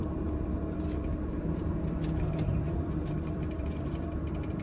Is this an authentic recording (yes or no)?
no